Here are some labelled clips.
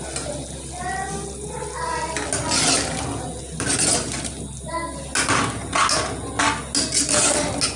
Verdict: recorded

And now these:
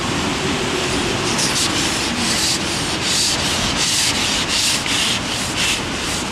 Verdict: remade